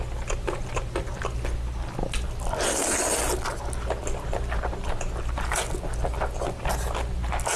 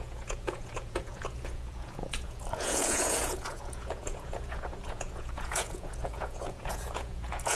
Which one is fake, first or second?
second